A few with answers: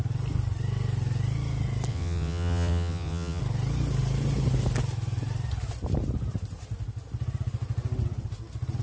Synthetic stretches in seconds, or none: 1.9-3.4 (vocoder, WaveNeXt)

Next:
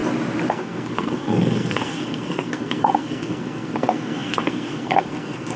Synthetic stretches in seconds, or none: 0.5-5.6 (codec, SNAC)

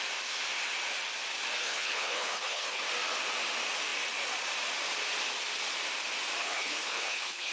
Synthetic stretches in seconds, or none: 1.6-2.8 (codec, HILCodec); 6.4-7.5

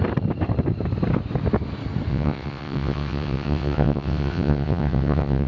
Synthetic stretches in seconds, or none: 2.1-5.5 (vocoder, WaveNeXt)